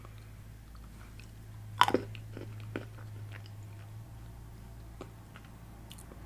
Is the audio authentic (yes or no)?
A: yes